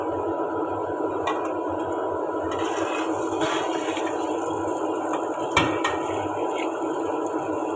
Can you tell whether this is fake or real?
real